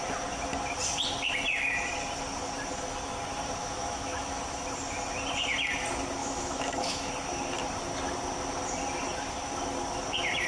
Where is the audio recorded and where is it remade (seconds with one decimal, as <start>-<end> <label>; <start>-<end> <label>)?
0.0-3.6 recorded; 3.6-4.4 remade; 4.4-6.2 recorded; 6.2-7.1 remade; 7.1-10.5 recorded